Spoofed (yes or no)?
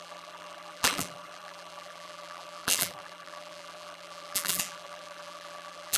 yes